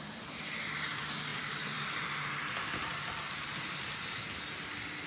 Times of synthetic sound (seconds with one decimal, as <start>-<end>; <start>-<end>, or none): 1.3-2.3